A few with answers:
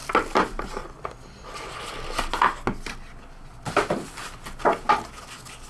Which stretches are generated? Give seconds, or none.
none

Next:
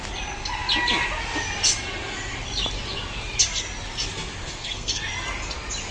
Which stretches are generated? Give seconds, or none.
4.4-5.0 (codec, SNAC)

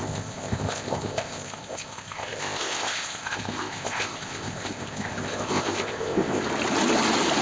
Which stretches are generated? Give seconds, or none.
0.0-6.4 (codec, ZipCodec)

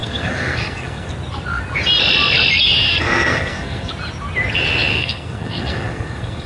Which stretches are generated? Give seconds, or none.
0.0-1.1 (codec, SNAC); 2.9-3.9; 4.9-6.5

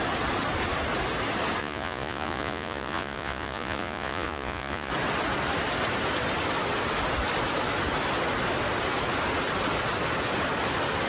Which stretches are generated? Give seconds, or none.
1.6-4.9 (vocoder, Vocos)

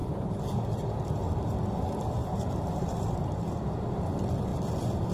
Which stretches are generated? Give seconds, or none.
0.0-1.3 (vocoder, BigVGAN v2); 2.2-3.5

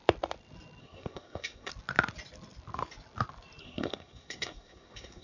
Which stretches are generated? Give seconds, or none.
0.8-1.7 (codec, SNAC); 3.6-5.2